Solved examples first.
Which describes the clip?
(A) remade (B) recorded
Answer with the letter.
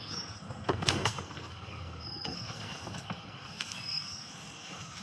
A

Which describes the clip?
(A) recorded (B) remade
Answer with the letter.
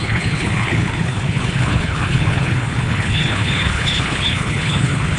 B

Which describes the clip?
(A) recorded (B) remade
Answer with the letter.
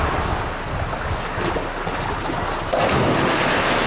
A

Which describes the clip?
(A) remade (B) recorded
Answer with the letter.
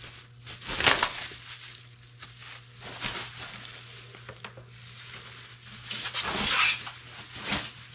B